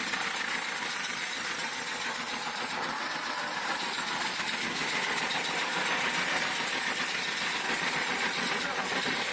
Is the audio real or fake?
real